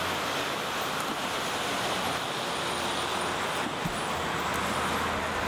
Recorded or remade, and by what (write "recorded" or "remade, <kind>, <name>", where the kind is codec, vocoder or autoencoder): recorded